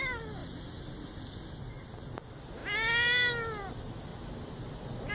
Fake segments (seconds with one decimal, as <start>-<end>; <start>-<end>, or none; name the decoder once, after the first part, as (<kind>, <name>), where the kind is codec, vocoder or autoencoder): none